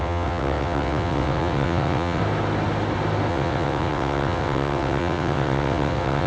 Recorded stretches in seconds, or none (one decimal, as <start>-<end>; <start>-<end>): 2.2-3.3